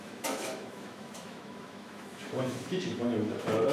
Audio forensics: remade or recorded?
remade